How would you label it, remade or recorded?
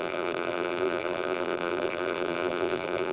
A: remade